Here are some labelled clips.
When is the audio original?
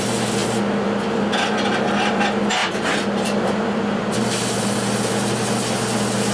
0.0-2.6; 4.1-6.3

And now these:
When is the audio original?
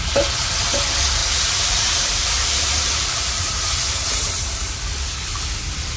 0.0-1.2; 4.3-6.0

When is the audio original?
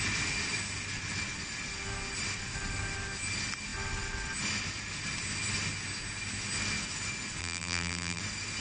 0.0-7.4; 8.2-8.6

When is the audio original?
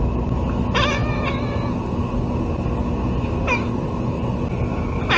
0.0-5.2